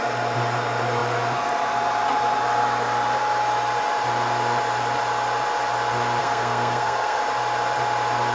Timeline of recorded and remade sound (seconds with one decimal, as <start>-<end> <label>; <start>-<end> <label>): 0.0-6.2 recorded; 6.2-7.2 remade; 7.2-8.3 recorded